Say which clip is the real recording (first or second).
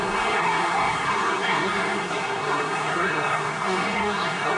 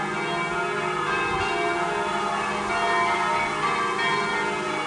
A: second